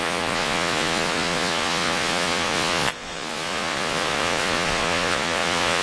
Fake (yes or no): yes